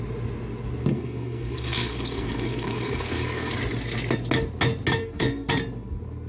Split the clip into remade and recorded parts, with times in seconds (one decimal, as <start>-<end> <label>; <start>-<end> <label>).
0.0-0.9 recorded; 0.9-3.5 remade; 3.5-5.0 recorded; 5.0-5.5 remade; 5.5-6.3 recorded